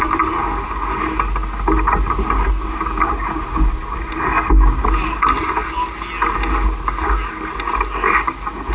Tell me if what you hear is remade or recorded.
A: recorded